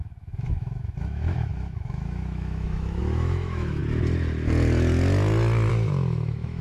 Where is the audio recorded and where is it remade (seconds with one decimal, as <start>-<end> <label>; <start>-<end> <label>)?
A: 0.0-3.8 remade; 3.8-5.7 recorded; 5.7-6.6 remade